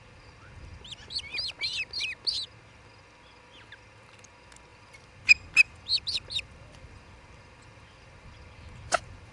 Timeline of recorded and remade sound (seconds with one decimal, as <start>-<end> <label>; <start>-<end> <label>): 0.0-4.7 recorded; 4.7-9.3 remade